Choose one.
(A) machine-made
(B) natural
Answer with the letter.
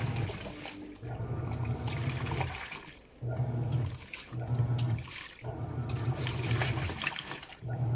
B